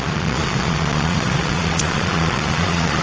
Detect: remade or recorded remade